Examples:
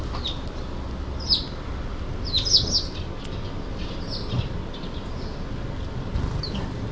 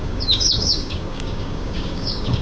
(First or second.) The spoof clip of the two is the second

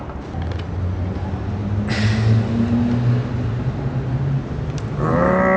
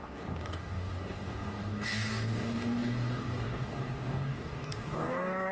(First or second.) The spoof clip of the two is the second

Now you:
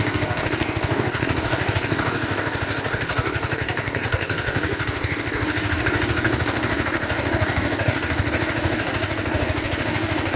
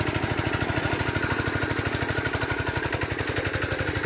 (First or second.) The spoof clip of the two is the first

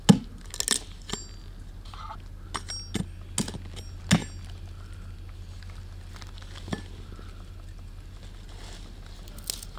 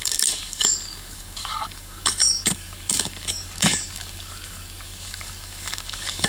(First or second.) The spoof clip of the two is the second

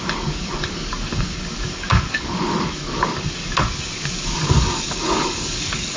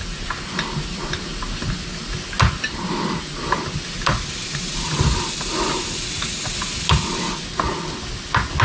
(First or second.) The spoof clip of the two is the first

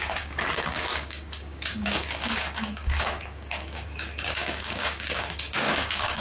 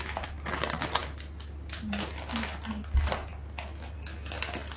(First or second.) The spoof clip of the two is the first